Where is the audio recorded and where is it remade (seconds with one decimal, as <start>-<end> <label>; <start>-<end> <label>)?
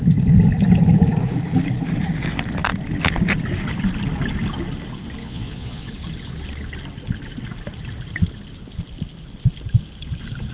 0.0-5.2 recorded; 5.2-5.9 remade; 5.9-10.5 recorded